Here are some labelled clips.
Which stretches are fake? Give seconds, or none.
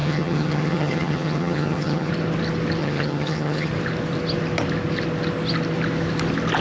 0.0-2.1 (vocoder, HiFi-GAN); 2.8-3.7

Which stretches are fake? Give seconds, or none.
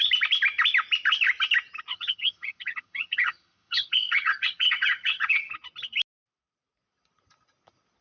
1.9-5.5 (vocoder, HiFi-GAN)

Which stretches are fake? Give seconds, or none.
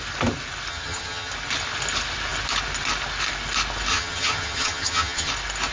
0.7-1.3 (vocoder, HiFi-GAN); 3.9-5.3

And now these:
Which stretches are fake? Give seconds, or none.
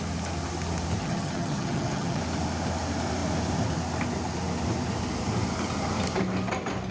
1.0-2.2 (vocoder, HiFi-GAN)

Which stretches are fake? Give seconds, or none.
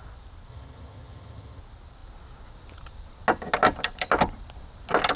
0.5-1.6 (vocoder, HiFi-GAN)